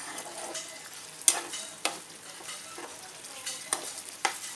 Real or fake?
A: real